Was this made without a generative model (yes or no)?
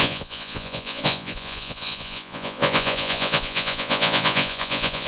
no